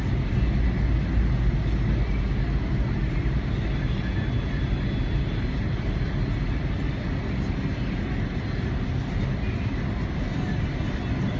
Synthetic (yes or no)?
no